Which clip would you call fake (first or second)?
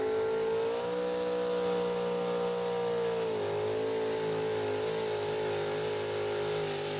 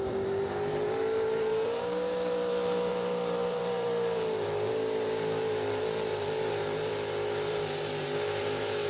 second